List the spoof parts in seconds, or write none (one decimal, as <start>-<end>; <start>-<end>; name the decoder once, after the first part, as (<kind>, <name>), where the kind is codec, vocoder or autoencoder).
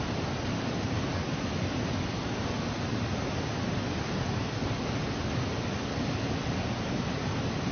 none